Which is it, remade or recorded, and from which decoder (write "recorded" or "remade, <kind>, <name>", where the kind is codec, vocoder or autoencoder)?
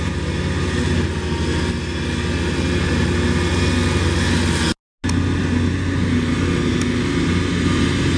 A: recorded